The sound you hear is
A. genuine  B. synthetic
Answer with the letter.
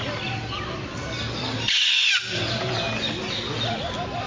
A